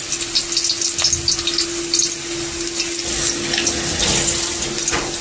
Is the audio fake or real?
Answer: real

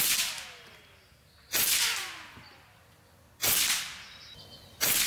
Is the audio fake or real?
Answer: real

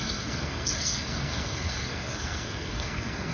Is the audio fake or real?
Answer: fake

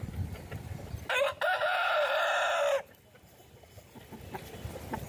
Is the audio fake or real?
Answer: real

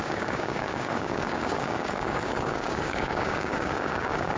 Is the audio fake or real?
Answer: fake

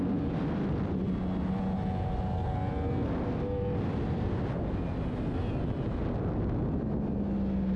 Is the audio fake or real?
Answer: real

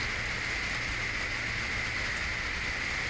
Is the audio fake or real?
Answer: real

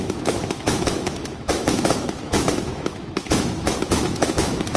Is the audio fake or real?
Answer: fake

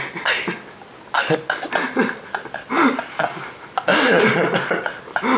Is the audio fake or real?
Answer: real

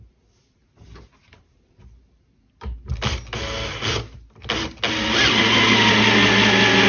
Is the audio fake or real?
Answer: real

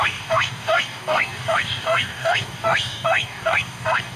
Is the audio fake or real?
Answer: fake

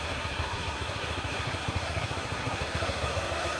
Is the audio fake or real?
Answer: fake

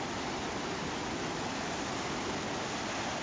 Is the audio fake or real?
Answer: real